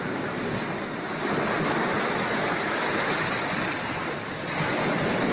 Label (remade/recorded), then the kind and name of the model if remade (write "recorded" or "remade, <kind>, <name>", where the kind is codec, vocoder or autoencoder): recorded